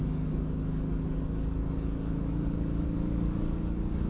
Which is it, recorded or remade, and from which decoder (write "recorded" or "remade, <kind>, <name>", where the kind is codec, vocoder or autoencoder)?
remade, codec, DAC